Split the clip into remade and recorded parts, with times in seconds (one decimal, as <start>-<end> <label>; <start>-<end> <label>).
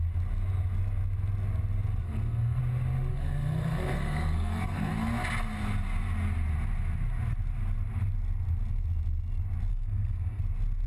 0.0-2.0 recorded; 2.0-2.6 remade; 2.6-3.1 recorded; 3.1-4.9 remade; 4.9-9.7 recorded; 9.7-10.4 remade; 10.4-10.9 recorded